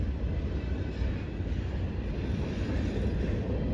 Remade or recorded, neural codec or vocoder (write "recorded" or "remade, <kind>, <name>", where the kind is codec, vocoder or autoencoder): recorded